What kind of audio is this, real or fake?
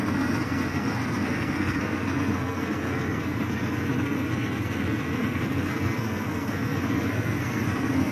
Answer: fake